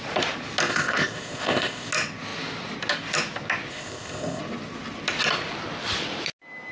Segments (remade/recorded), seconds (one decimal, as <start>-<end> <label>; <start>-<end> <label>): 0.0-0.7 recorded; 0.7-1.9 remade; 1.9-3.7 recorded; 3.7-4.4 remade; 4.4-6.7 recorded

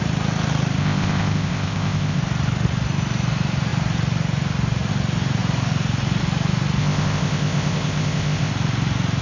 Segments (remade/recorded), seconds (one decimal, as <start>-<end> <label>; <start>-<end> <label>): 0.0-0.8 recorded; 0.8-2.2 remade; 2.2-6.8 recorded; 6.8-8.5 remade; 8.5-9.2 recorded

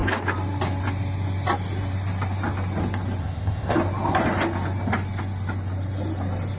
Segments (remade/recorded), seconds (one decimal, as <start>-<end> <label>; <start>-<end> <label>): 0.0-3.2 recorded; 3.2-3.8 remade; 3.8-6.6 recorded

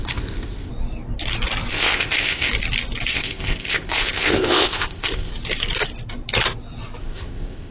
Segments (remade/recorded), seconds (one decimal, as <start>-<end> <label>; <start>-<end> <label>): 0.0-0.7 remade; 0.7-1.7 recorded; 1.7-2.5 remade; 2.5-3.1 recorded; 3.1-5.3 remade; 5.3-7.0 recorded; 7.0-7.7 remade

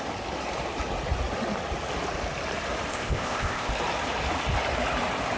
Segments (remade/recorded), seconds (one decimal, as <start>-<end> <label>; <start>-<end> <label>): 0.0-2.9 recorded; 2.9-3.7 remade; 3.7-5.4 recorded

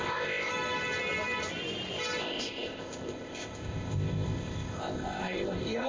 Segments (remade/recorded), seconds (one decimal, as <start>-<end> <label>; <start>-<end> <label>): 0.0-0.5 remade; 0.5-2.2 recorded; 2.2-5.9 remade

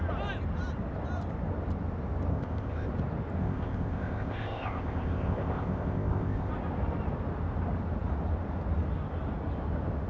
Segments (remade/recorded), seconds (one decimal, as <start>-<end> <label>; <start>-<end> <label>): 0.0-2.3 recorded; 2.3-2.9 remade; 2.9-3.4 recorded; 3.4-6.5 remade; 6.5-10.1 recorded